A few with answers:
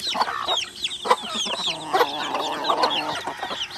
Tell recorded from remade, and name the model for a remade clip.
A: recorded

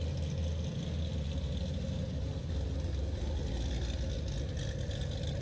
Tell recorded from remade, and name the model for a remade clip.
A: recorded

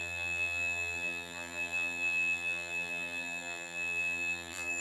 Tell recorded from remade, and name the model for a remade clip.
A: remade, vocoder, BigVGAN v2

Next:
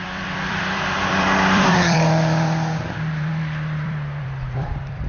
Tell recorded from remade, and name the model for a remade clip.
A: remade, vocoder, BigVGAN v2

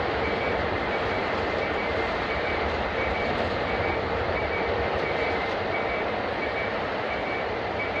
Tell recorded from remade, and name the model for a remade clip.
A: remade, vocoder, BigVGAN v2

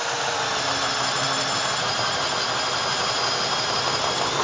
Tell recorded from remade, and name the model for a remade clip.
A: recorded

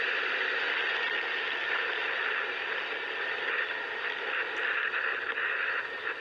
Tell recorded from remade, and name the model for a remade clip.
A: recorded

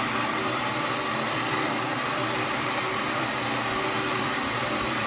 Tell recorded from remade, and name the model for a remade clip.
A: remade, vocoder, BigVGAN v2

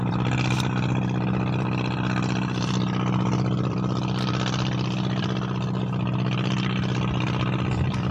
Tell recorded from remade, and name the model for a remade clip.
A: remade, vocoder, BigVGAN v2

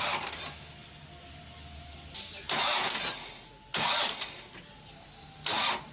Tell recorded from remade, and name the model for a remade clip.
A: recorded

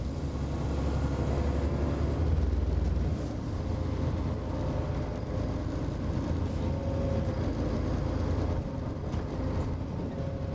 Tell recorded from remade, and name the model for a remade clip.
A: recorded